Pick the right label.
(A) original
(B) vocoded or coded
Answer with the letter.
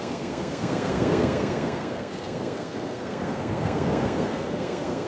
B